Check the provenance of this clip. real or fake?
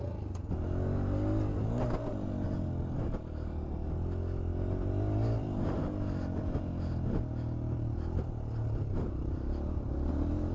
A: real